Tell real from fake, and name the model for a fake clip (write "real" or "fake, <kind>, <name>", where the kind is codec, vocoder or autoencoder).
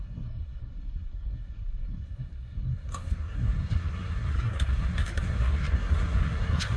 fake, codec, SNAC